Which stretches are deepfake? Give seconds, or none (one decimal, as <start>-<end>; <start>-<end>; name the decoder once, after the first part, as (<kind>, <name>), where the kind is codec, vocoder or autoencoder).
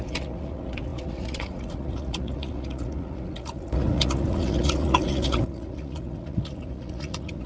0.0-7.5 (vocoder, Vocos)